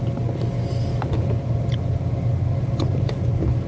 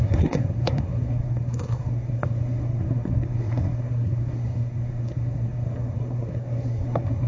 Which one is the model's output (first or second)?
second